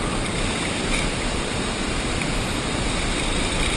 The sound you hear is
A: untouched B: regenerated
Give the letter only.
B